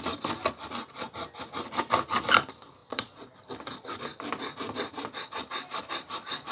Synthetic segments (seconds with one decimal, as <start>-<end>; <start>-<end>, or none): 2.8-3.3